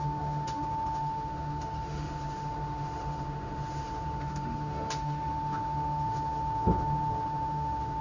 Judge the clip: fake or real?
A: fake